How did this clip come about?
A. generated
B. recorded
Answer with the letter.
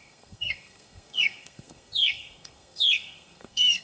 A